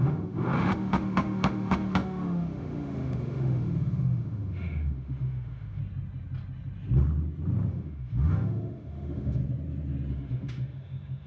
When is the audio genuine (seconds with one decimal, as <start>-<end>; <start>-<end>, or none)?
5.8-7.7; 9.4-10.1